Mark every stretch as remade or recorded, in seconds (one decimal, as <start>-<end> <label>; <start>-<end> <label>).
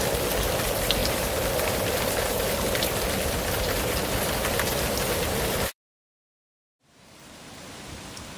0.0-8.4 remade